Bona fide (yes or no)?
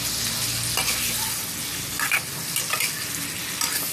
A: yes